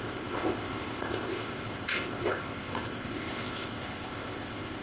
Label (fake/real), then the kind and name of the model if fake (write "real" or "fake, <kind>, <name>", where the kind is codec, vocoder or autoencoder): fake, codec, ZipCodec